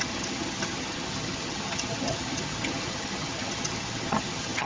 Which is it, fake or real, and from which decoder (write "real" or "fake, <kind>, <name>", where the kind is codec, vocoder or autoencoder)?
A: fake, vocoder, HiFi-GAN